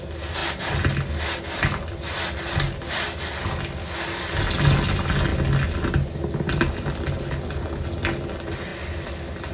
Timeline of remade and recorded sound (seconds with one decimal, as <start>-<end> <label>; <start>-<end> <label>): 0.0-9.5 recorded